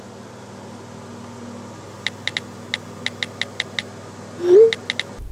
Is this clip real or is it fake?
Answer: real